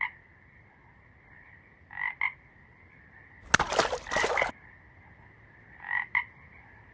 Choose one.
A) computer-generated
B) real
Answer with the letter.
B